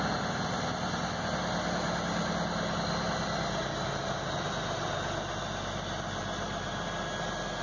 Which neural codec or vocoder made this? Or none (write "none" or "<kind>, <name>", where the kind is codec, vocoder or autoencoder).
none